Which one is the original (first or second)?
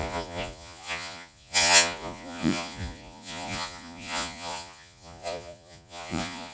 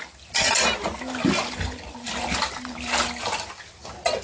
second